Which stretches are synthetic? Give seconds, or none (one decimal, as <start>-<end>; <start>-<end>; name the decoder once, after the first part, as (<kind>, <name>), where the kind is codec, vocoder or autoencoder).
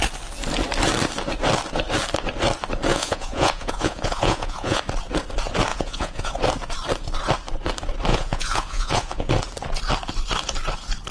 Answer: 2.9-4.8 (vocoder, Vocos); 5.7-6.3; 8.1-9.3